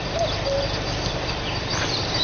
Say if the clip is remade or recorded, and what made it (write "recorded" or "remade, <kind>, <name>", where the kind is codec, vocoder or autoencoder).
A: remade, vocoder, BigVGAN v2